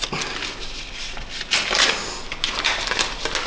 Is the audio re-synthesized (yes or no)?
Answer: no